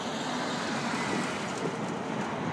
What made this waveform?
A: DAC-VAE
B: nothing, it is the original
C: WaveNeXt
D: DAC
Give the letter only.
B